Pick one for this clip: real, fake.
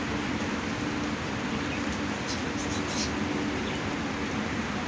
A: real